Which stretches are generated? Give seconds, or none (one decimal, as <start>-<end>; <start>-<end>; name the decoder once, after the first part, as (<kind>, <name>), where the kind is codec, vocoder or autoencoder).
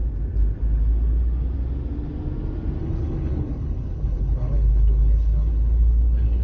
2.8-6.4 (codec, HILCodec)